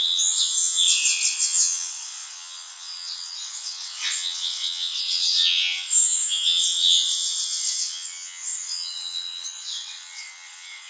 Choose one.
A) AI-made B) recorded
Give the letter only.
A